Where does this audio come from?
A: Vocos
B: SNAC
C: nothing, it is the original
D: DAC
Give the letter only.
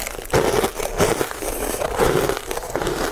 C